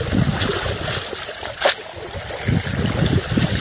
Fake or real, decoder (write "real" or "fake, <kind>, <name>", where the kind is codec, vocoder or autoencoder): real